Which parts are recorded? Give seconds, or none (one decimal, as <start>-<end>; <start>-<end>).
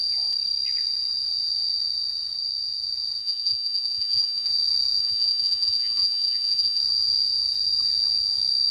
0.0-3.2; 4.5-5.0; 6.8-8.7